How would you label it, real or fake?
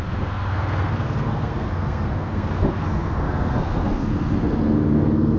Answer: fake